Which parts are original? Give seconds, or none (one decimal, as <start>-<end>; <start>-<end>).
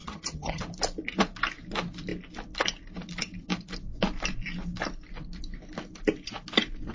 0.6-6.9